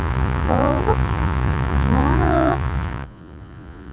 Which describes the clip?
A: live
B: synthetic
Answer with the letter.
B